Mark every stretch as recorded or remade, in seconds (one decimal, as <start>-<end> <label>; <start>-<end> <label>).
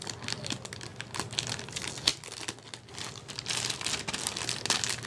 0.0-5.1 recorded